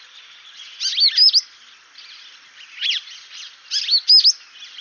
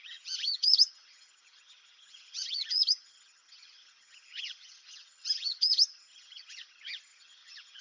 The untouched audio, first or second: first